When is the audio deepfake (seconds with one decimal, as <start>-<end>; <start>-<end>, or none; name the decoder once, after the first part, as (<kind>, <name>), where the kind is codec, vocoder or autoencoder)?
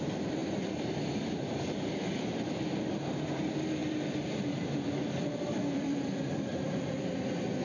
3.8-6.9 (vocoder, BigVGAN v2)